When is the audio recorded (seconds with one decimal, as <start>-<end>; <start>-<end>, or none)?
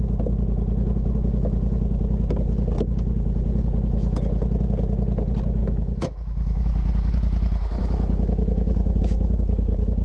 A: 0.0-5.6; 9.0-10.0